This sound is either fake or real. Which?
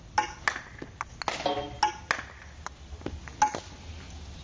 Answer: real